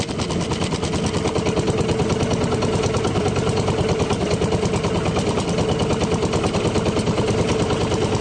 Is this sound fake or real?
real